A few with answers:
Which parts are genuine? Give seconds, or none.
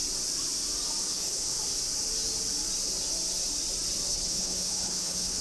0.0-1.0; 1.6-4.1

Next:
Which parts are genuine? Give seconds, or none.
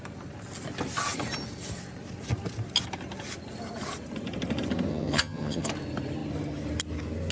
0.0-4.9; 5.7-7.3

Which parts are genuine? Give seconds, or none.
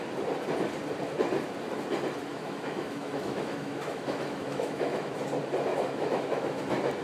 0.0-2.3; 5.2-5.7; 6.6-7.0